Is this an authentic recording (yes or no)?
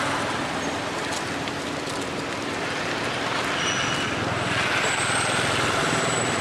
yes